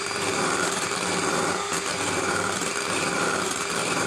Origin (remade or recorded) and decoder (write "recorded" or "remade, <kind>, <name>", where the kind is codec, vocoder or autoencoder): remade, vocoder, BigVGAN v2